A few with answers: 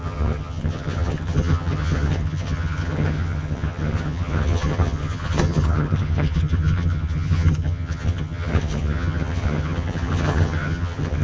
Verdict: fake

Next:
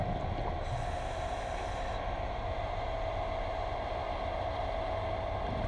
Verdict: real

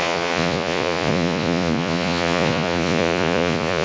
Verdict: fake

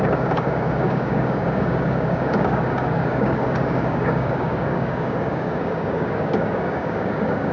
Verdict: fake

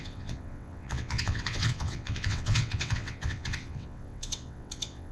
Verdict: fake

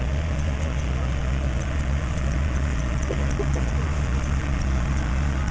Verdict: fake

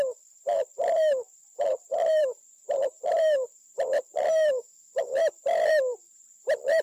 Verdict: fake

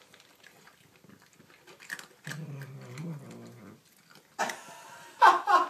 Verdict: real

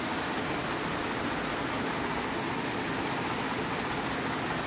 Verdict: real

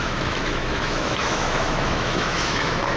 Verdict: fake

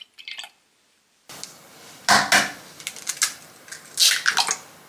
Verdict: real